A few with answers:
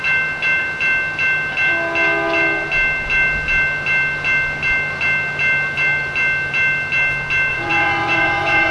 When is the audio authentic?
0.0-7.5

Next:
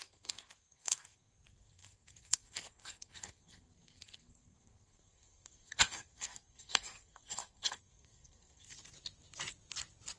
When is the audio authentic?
8.7-10.2

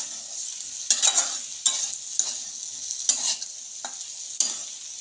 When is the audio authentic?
0.0-5.0

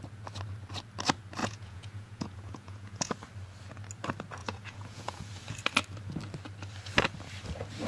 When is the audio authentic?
0.0-1.4; 3.1-4.4; 5.3-7.9

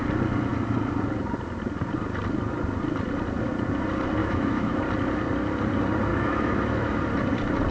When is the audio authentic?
0.0-4.2; 4.8-6.1; 7.0-7.7

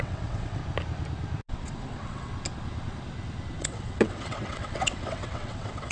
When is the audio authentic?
0.6-1.5; 2.3-3.6

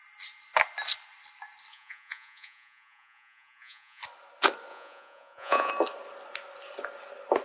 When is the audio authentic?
0.0-1.7; 4.0-4.7; 5.7-7.4

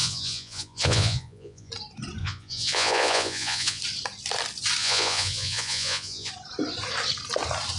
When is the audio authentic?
1.7-2.2; 3.8-4.8; 6.3-7.8